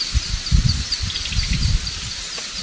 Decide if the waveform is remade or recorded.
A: recorded